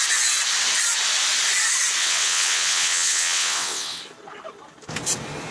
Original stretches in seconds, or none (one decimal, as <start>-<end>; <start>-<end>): 0.0-2.0; 4.0-5.5